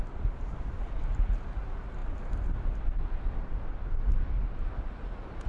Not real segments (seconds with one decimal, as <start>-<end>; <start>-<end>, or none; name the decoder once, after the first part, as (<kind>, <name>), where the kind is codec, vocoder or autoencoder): none